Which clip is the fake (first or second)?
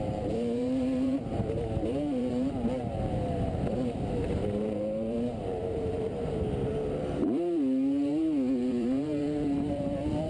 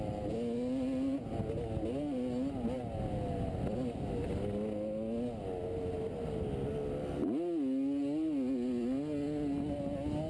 first